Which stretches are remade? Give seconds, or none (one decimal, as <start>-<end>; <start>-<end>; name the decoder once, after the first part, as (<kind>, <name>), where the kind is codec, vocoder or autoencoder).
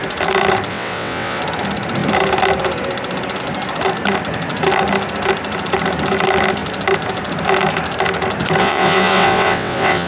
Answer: 0.7-1.4 (vocoder, WaveNeXt); 8.6-10.1